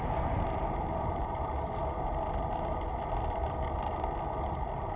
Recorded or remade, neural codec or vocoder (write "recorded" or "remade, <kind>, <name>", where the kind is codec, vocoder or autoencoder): recorded